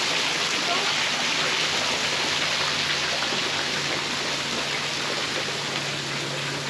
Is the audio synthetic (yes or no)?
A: no